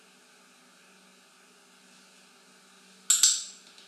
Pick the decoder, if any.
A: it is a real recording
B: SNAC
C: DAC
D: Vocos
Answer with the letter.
A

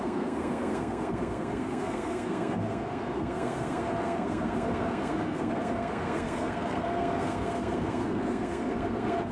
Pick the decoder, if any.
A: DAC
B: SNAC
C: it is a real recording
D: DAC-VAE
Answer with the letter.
B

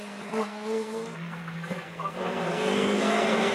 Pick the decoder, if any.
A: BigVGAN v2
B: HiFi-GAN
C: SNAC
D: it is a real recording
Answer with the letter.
C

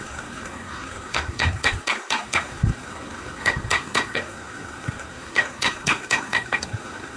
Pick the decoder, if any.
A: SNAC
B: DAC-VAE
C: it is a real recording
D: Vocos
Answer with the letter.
A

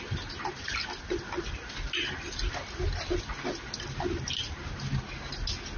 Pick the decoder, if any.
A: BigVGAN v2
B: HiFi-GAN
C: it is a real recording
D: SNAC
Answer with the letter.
C